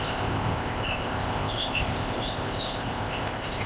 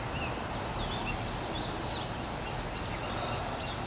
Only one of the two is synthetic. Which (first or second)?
first